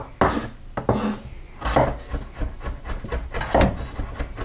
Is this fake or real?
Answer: real